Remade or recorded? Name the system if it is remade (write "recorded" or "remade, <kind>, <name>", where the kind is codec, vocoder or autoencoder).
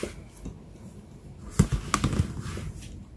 recorded